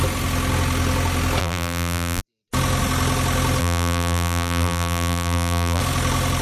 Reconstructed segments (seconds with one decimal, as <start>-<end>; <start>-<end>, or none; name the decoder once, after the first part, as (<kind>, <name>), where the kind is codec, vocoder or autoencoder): 1.4-2.2 (vocoder, BigVGAN v2); 3.6-5.8